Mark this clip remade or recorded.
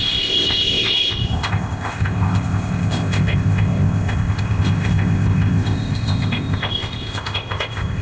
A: remade